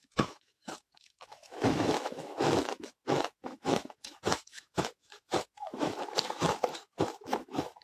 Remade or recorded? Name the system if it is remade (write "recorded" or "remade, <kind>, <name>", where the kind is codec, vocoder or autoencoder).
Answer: remade, autoencoder, DAC-VAE